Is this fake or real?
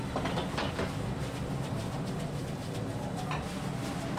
real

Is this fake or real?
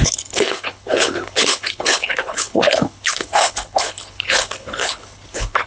fake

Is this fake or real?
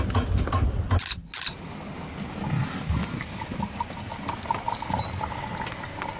real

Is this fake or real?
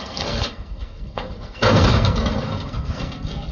fake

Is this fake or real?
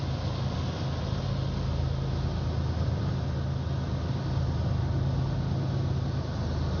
real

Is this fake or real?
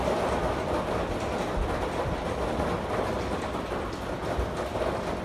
real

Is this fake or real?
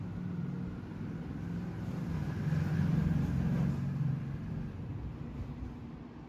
real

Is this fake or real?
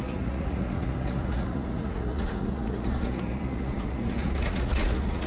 fake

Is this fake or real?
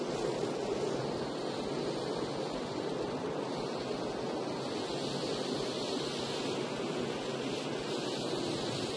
real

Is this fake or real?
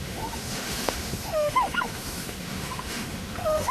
fake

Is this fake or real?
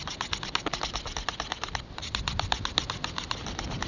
real